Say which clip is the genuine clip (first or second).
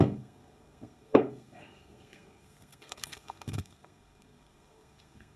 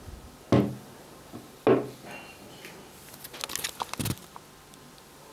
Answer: second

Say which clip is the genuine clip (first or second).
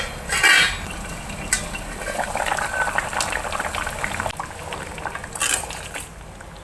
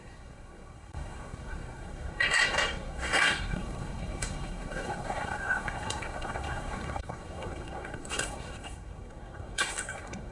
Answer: first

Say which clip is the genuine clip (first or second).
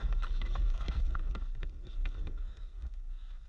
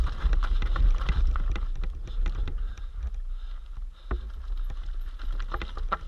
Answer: second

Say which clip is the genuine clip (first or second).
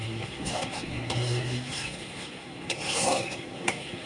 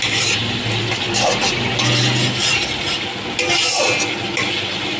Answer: second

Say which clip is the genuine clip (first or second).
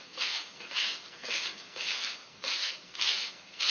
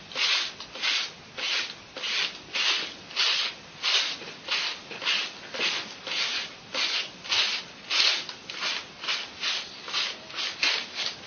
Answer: second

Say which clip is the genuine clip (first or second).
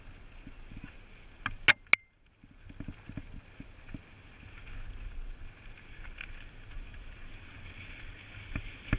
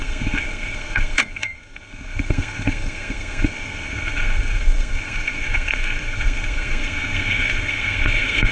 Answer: first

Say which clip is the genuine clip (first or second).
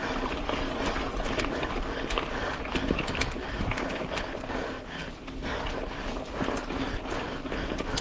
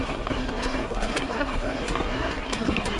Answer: first